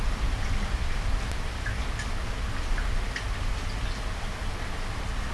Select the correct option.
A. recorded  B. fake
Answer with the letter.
A